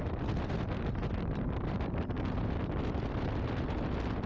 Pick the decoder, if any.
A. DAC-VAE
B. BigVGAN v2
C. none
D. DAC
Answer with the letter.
C